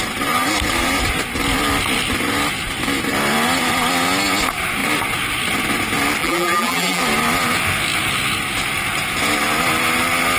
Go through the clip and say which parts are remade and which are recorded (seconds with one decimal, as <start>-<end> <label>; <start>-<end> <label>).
0.0-6.2 recorded; 6.2-7.0 remade; 7.0-10.4 recorded

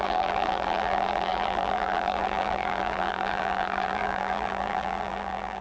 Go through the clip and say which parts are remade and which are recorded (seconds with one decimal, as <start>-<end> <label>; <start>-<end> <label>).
0.0-5.6 remade

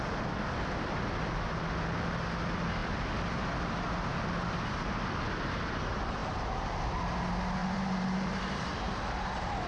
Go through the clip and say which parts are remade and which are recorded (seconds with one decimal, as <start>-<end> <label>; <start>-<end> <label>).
0.0-6.2 recorded; 6.2-7.0 remade; 7.0-7.6 recorded; 7.6-9.0 remade; 9.0-9.7 recorded

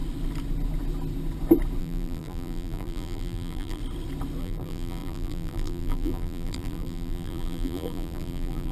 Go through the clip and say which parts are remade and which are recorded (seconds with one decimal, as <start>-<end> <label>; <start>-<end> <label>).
0.0-1.8 recorded; 1.8-3.8 remade; 3.8-4.4 recorded; 4.4-8.7 remade